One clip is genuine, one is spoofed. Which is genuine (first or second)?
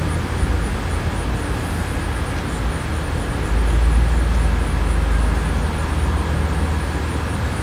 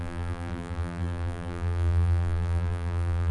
first